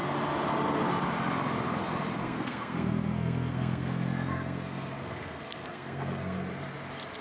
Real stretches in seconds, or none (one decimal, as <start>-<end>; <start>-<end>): 0.0-2.2; 6.5-7.2